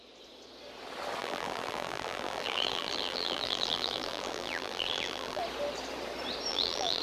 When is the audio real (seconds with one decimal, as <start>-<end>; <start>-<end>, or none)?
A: 0.0-1.2; 5.4-6.5